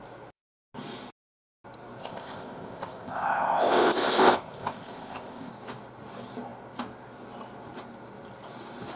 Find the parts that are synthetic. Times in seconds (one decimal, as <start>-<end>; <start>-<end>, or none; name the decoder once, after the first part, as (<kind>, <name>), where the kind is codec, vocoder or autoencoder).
2.0-5.5 (codec, ZipCodec)